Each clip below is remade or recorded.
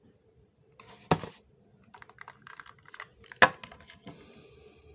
recorded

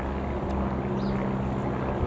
recorded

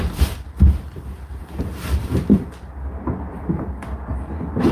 remade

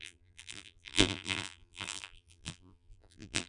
remade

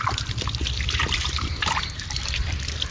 remade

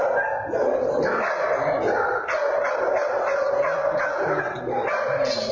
remade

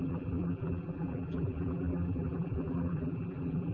remade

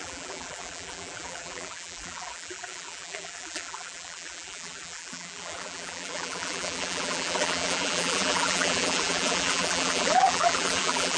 remade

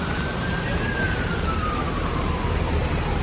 remade